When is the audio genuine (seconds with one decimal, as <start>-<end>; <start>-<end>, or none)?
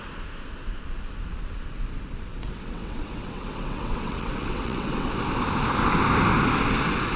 0.0-2.3; 5.1-7.2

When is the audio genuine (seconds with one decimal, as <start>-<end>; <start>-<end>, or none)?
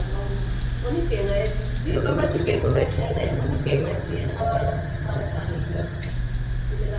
0.0-1.9; 6.1-7.0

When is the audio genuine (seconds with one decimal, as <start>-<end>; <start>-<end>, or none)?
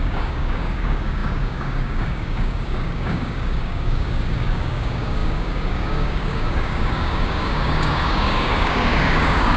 none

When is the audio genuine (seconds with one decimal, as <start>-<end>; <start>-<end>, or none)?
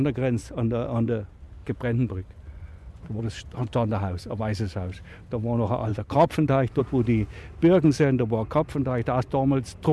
0.0-1.6; 3.2-3.6; 4.4-5.9; 6.8-9.9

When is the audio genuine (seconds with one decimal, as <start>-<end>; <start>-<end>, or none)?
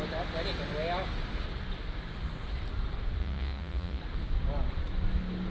0.0-3.2; 4.0-5.5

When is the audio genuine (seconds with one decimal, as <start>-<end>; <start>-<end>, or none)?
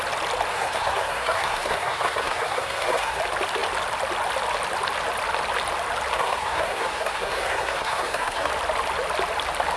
0.0-0.5; 3.2-6.1; 8.5-9.8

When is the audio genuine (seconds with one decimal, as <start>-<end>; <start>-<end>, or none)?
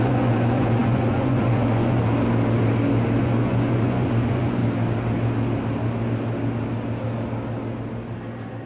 2.0-3.2; 4.6-8.7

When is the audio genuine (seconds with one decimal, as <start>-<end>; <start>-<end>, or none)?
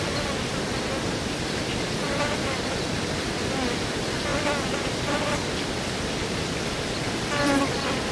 0.0-8.1